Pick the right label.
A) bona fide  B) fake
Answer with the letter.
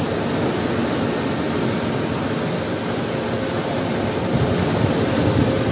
A